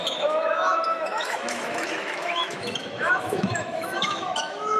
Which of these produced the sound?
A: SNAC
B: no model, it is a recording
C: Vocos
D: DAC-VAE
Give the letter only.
D